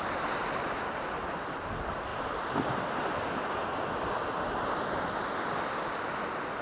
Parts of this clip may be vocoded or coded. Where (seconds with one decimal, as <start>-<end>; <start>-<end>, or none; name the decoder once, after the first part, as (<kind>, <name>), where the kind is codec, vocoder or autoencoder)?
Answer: none